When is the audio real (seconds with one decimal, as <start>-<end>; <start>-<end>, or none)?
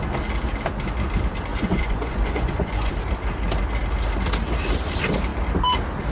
0.0-1.5; 2.9-6.1